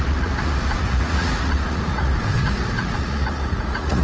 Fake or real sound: fake